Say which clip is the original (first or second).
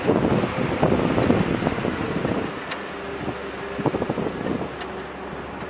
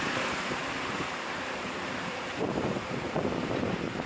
first